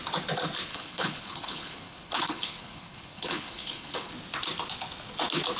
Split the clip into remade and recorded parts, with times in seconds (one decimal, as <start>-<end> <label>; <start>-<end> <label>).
0.0-0.7 recorded; 0.7-4.1 remade; 4.1-5.6 recorded